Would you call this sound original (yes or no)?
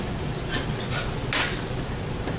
yes